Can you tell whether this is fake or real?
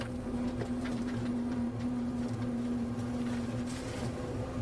fake